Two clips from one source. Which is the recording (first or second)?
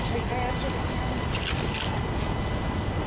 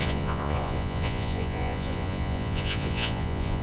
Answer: first